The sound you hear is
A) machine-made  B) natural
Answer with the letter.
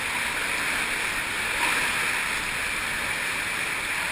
B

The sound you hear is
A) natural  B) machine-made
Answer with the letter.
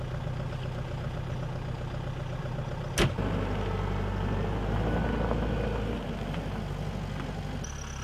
A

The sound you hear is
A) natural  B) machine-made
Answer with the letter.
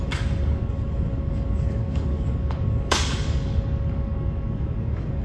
B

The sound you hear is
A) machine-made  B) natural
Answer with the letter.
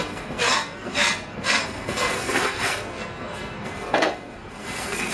A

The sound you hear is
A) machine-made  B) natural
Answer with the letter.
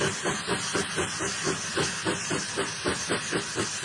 B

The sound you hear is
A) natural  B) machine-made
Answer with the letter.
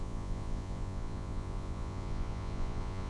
B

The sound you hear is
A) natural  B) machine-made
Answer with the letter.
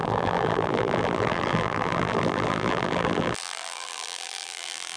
B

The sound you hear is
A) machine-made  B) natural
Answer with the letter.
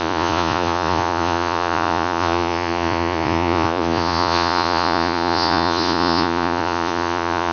A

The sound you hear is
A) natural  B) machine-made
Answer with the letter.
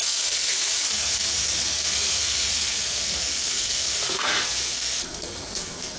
B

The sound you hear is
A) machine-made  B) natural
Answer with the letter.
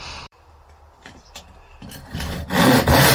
A